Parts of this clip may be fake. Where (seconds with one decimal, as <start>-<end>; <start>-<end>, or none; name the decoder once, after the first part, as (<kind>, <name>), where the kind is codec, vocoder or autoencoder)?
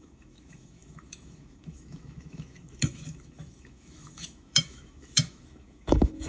0.0-6.3 (autoencoder, DAC-VAE)